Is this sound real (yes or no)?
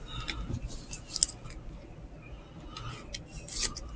yes